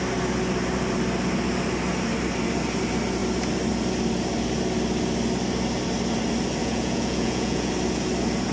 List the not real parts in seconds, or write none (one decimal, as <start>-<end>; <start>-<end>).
6.6-7.7